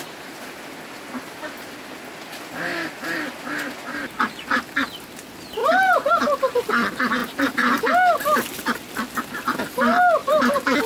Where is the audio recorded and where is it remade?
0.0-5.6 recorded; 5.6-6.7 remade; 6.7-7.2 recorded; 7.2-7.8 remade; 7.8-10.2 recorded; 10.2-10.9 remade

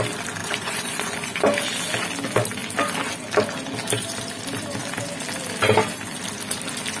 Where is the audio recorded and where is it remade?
0.0-0.4 recorded; 0.4-1.4 remade; 1.4-7.0 recorded